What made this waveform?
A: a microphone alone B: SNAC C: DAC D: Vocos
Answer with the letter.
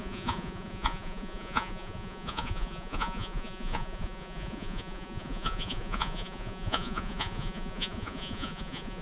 D